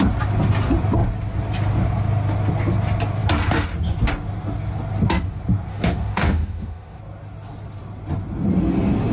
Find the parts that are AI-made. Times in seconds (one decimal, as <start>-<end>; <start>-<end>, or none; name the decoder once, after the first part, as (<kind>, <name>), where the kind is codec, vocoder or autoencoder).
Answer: 5.7-7.0 (autoencoder, DAC-VAE)